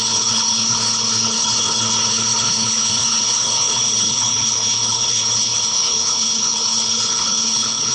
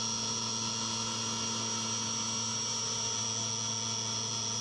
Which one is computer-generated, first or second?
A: first